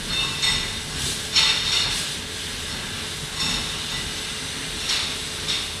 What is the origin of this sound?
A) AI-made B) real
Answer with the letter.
B